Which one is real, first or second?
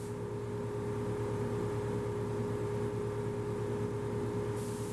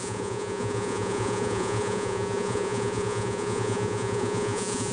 first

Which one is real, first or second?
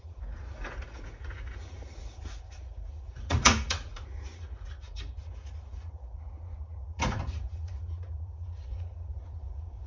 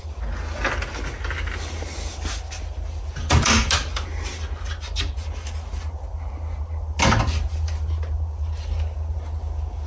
second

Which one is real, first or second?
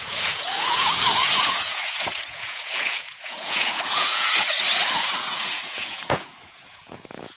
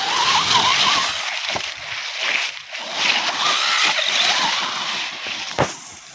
second